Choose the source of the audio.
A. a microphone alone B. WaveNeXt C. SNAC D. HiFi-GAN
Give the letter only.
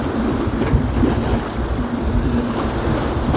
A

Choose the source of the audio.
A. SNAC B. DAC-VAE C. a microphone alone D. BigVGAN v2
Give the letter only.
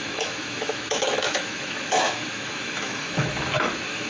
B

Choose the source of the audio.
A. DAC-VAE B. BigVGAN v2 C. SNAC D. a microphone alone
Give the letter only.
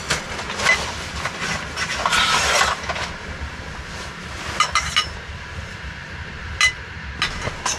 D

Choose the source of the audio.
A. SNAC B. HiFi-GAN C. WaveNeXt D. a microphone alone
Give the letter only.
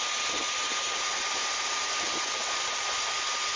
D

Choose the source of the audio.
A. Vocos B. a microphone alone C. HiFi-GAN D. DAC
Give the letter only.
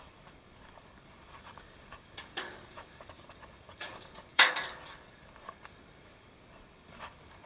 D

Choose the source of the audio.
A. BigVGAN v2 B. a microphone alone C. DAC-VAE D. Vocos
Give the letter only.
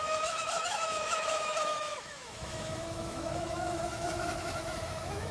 C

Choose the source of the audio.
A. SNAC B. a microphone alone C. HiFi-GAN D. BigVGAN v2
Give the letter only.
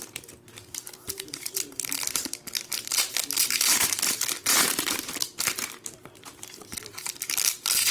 D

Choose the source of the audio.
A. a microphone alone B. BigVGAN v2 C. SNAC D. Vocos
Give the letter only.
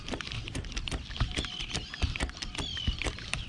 A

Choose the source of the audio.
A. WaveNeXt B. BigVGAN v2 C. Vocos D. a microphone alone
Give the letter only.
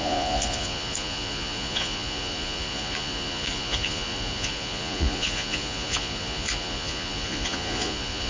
C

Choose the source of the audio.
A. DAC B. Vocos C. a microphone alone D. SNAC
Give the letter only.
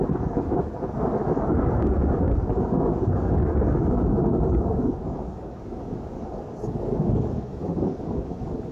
A